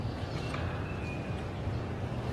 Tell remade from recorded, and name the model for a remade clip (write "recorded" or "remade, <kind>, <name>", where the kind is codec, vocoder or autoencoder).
recorded